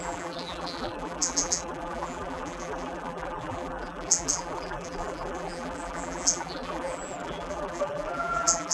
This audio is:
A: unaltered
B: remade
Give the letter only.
B